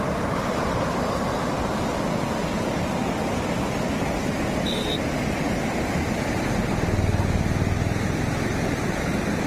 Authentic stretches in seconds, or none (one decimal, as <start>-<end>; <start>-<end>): 0.0-0.4; 1.7-9.5